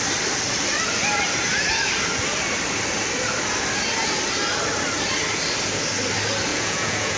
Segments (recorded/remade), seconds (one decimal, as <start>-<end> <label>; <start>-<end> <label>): 0.0-6.5 recorded; 6.5-7.2 remade